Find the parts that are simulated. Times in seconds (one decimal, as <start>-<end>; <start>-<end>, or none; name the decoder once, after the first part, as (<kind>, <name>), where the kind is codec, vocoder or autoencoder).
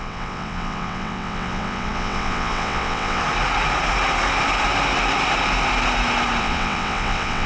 0.0-3.2 (vocoder, WaveNeXt); 6.4-7.5